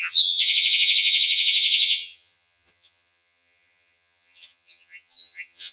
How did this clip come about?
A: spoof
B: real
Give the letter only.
A